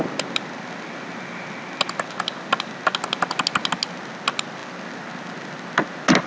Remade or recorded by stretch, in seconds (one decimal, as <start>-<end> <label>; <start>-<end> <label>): 0.0-6.3 recorded